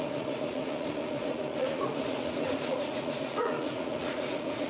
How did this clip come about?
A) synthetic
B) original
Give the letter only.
A